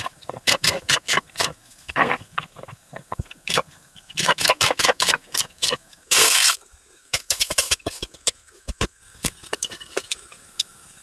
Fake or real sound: fake